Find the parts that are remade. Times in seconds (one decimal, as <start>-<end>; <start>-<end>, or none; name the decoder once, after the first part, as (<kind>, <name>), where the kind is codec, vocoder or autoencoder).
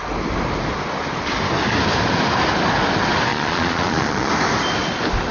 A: 3.3-4.3 (vocoder, Vocos)